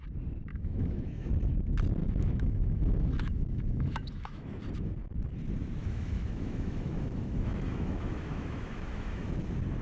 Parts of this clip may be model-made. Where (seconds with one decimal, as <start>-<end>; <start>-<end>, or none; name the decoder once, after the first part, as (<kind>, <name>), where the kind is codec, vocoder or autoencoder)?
0.5-1.3 (autoencoder, DAC-VAE); 2.0-4.6; 5.8-9.3